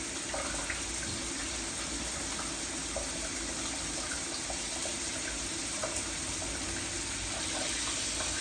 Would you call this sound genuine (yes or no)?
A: yes